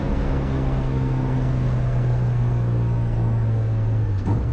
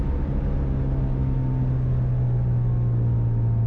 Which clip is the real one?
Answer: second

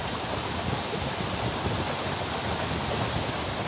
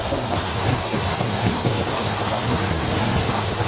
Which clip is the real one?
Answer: first